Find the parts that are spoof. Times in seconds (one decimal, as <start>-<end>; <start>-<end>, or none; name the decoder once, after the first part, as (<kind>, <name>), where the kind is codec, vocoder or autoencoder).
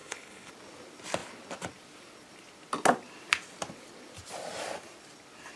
0.0-0.5 (codec, HILCodec)